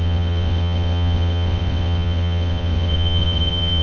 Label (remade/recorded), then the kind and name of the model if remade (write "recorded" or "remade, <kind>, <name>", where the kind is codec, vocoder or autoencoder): remade, vocoder, WaveNeXt